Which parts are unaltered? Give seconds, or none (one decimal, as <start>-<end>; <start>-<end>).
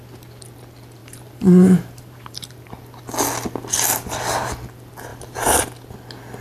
0.0-1.0; 2.5-5.1; 5.6-6.4